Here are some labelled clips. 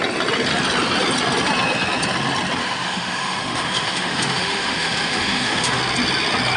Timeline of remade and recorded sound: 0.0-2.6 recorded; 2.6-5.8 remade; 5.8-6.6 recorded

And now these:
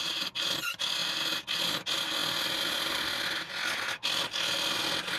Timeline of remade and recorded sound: 0.0-5.2 recorded